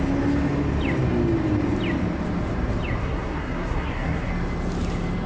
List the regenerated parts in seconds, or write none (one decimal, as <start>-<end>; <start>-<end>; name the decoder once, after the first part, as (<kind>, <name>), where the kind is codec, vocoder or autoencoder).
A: 3.0-4.3 (codec, SNAC)